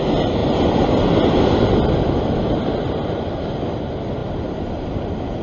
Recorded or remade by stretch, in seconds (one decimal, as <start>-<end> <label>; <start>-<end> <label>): 0.0-5.4 recorded